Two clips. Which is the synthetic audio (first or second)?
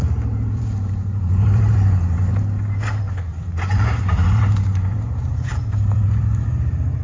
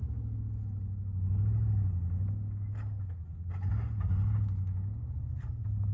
first